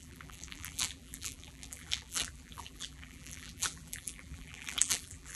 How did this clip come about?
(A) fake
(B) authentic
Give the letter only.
A